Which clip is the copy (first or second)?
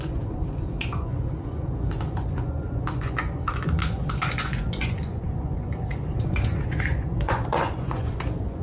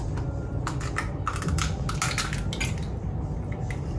first